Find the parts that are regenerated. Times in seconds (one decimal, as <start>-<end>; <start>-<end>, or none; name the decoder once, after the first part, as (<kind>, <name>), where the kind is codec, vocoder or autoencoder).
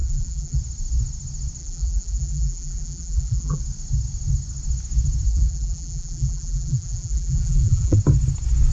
0.0-0.6 (vocoder, BigVGAN v2); 1.6-3.6; 5.3-8.0